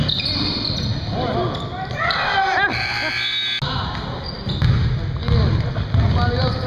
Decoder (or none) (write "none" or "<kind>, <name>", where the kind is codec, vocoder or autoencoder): none